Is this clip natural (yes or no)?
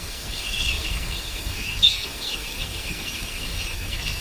no